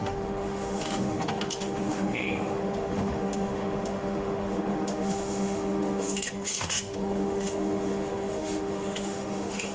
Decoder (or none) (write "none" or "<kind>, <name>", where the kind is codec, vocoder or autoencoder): autoencoder, DAC-VAE